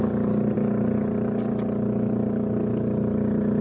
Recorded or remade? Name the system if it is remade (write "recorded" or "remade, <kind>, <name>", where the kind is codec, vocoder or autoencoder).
recorded